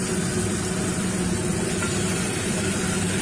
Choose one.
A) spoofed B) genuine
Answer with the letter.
B